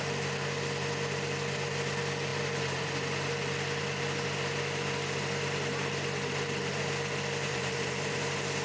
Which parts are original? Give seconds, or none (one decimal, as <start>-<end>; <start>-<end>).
0.0-7.5; 8.2-8.6